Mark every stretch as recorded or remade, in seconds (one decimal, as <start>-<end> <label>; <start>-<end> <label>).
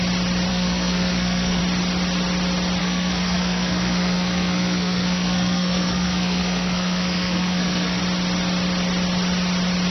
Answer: 0.0-0.5 recorded; 0.5-1.6 remade; 1.6-2.8 recorded; 2.8-8.0 remade; 8.0-9.9 recorded